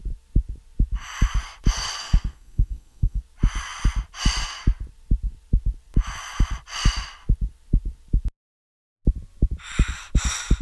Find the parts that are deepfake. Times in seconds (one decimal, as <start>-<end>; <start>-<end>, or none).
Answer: 2.0-3.2